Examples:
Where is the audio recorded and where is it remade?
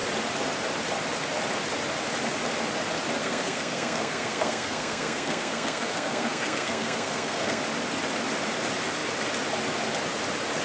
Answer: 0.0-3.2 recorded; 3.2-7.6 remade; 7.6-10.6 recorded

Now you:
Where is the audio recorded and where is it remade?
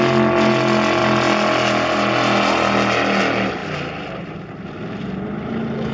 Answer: 0.0-5.9 recorded